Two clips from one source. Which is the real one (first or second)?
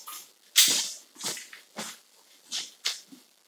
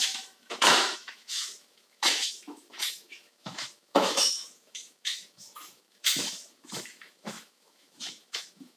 first